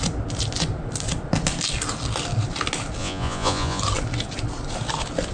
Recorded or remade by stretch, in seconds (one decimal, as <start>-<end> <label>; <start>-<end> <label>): 0.0-3.0 recorded; 3.0-3.8 remade; 3.8-5.3 recorded